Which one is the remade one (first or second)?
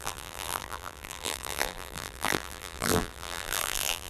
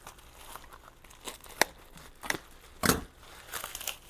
first